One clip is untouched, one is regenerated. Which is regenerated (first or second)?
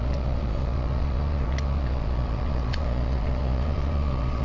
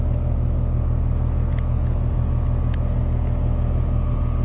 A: first